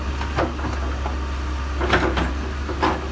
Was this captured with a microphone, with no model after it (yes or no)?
yes